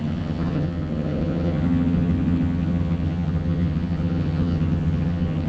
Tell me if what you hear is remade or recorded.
remade